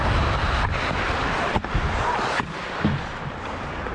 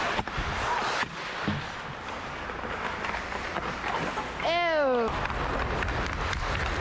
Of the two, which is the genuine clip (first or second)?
second